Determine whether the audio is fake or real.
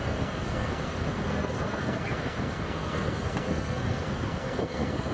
fake